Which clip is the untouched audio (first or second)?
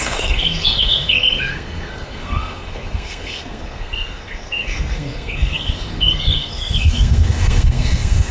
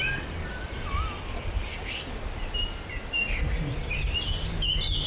second